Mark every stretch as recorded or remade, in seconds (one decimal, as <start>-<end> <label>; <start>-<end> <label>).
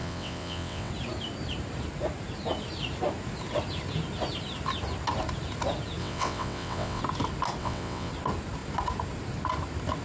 0.0-0.9 remade; 0.9-6.0 recorded; 6.0-7.0 remade; 7.0-7.6 recorded; 7.6-8.1 remade; 8.1-10.0 recorded